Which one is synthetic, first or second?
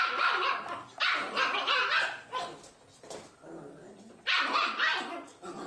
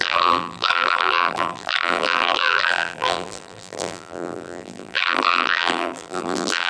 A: second